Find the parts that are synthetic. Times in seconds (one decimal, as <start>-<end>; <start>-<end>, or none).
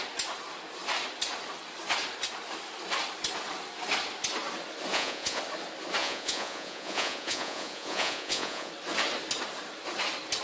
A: 4.9-5.4; 6.0-8.7